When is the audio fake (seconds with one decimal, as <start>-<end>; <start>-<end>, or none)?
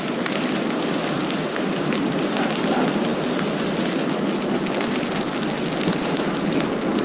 none